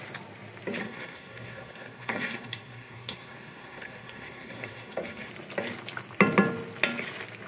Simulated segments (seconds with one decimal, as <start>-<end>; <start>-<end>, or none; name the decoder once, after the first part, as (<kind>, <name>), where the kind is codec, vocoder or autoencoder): 0.8-5.3 (codec, SNAC)